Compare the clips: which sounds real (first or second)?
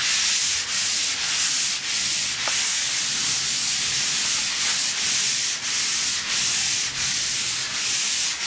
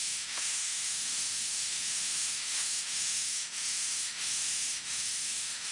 first